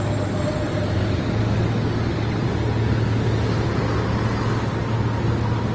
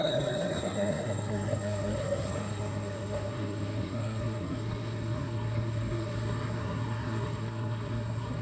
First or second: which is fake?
second